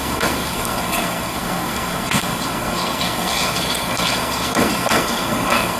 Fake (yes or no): yes